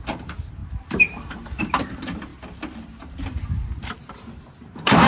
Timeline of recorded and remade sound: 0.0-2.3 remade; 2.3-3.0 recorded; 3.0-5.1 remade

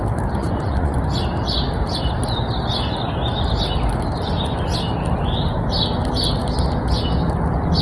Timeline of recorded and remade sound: 0.0-0.4 recorded; 0.4-1.0 remade; 1.0-7.8 recorded

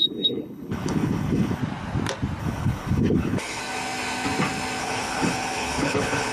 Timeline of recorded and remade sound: 0.0-1.6 remade; 1.6-2.4 recorded; 2.4-3.6 remade; 3.6-4.8 recorded; 4.8-6.3 remade

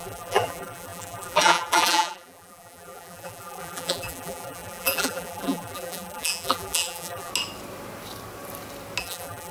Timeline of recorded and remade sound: 0.0-7.3 remade; 7.3-9.0 recorded; 9.0-9.5 remade

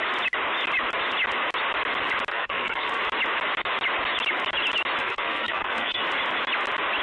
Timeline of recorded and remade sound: 0.0-2.3 recorded; 2.3-3.0 remade; 3.0-5.0 recorded; 5.0-6.0 remade; 6.0-7.0 recorded